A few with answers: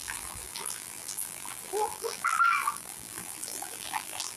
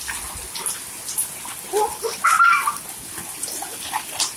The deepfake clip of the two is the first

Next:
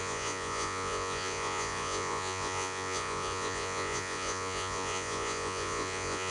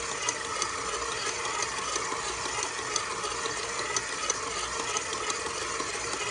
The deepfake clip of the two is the first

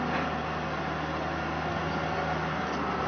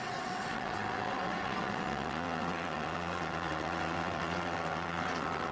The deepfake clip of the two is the second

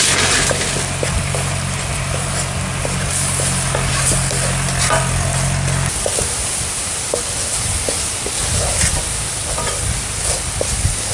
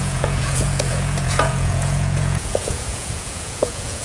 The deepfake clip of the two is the second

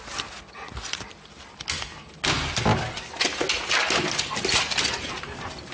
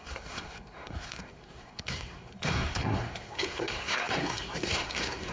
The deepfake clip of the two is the second